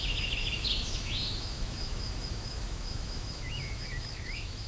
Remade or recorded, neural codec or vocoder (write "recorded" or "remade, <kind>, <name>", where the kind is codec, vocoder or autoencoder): remade, autoencoder, DAC-VAE